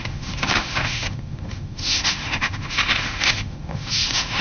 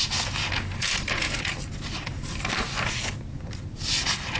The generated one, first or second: first